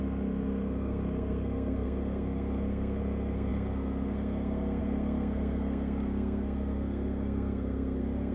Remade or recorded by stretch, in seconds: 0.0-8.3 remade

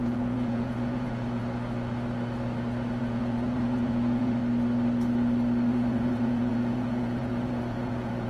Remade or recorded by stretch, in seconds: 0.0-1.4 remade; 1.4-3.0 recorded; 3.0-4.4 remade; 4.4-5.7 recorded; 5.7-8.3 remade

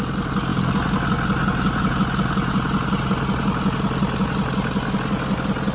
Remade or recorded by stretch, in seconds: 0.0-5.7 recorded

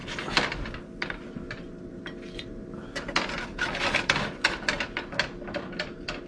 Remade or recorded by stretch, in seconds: 0.0-6.3 recorded